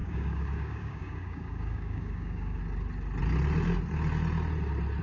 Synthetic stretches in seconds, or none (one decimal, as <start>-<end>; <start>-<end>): 0.0-2.6